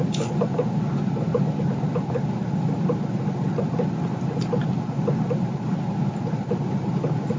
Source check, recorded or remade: recorded